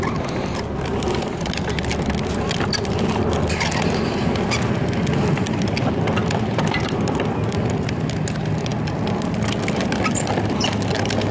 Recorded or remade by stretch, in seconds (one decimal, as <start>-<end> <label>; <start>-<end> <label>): 0.0-11.3 recorded